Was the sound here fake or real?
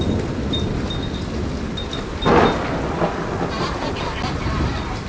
real